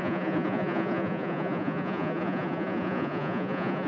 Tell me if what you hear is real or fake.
fake